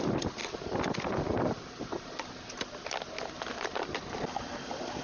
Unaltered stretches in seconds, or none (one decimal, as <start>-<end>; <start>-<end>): 0.0-5.0